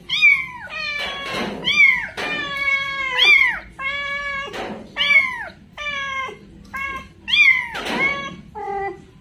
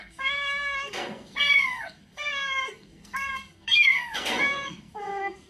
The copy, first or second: second